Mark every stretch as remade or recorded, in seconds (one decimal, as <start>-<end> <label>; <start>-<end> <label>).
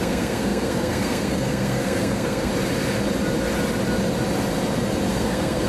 0.0-2.5 remade; 2.5-5.1 recorded; 5.1-5.7 remade